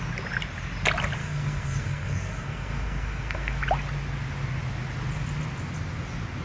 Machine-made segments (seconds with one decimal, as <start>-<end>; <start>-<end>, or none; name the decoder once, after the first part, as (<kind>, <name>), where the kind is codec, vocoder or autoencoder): 1.2-3.6 (codec, SNAC)